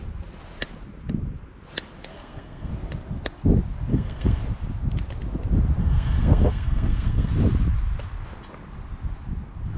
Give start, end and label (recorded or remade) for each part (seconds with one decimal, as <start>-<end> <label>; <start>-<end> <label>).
0.0-2.1 recorded; 2.1-2.7 remade; 2.7-3.9 recorded; 3.9-4.4 remade; 4.4-5.8 recorded; 5.8-7.3 remade; 7.3-9.8 recorded